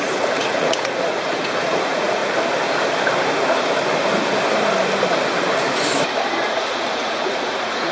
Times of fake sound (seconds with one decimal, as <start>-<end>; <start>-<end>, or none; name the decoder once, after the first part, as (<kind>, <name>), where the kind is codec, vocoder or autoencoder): 0.0-2.2 (vocoder, Vocos); 6.5-7.9